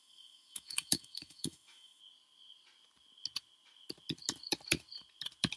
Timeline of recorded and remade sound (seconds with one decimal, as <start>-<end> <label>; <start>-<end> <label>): 0.0-2.0 remade; 2.0-5.6 recorded